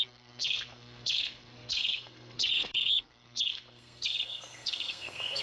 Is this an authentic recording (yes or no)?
no